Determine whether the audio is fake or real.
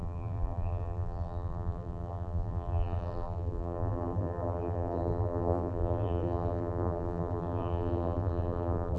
fake